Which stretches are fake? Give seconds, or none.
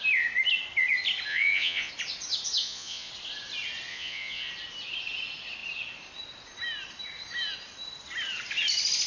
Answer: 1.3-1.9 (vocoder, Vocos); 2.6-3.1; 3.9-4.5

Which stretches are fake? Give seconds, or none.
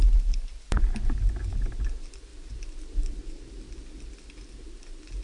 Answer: none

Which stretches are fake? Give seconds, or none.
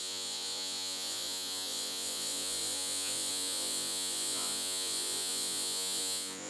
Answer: 0.0-6.5 (vocoder, Vocos)